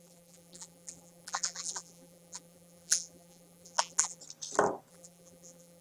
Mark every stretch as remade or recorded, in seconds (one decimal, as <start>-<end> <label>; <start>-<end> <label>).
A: 0.0-4.2 remade; 4.2-4.9 recorded; 4.9-5.8 remade